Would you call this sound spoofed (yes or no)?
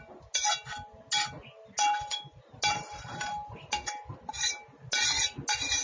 no